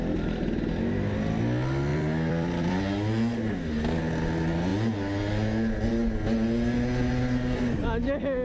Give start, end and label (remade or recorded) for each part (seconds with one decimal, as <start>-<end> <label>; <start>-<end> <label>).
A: 0.0-1.9 recorded; 1.9-2.8 remade; 2.8-8.4 recorded